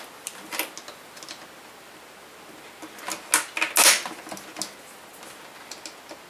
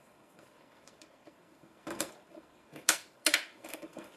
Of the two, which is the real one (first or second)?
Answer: first